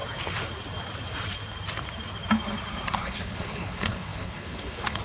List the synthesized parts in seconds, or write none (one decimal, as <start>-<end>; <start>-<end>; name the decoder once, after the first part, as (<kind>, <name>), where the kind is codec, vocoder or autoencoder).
3.0-5.0 (codec, HILCodec)